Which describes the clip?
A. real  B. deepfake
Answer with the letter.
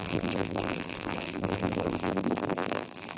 B